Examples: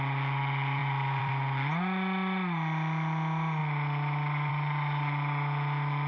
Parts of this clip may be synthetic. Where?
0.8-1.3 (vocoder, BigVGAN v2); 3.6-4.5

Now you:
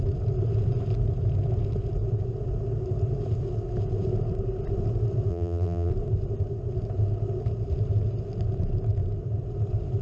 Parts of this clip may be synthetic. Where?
5.3-5.9 (vocoder, BigVGAN v2)

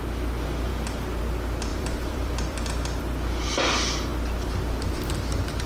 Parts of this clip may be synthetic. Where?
1.7-3.0 (vocoder, BigVGAN v2)

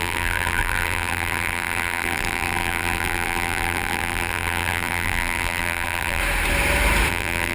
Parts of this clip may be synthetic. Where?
0.0-6.2 (vocoder, BigVGAN v2); 7.1-7.5

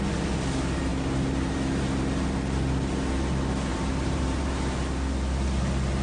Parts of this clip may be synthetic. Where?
3.7-4.5 (vocoder, BigVGAN v2)

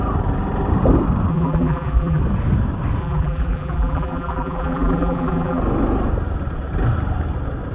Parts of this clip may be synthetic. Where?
1.3-2.2 (vocoder, BigVGAN v2); 3.0-5.6

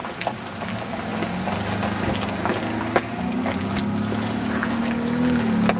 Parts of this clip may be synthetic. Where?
0.0-0.7 (vocoder, BigVGAN v2)

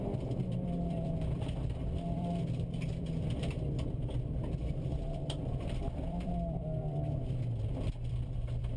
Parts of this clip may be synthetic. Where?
0.0-8.8 (vocoder, BigVGAN v2)